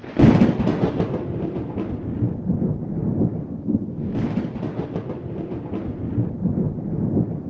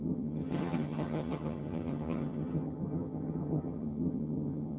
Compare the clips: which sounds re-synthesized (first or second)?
second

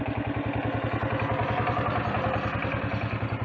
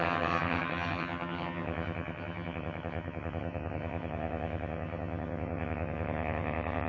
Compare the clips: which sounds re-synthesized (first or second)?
second